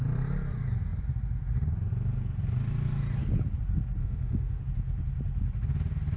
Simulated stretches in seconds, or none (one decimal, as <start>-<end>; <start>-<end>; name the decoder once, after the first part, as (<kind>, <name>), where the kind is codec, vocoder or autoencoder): 4.0-4.6 (autoencoder, DAC-VAE)